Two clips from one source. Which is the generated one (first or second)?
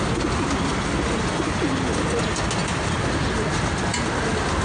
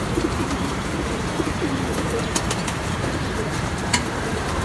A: second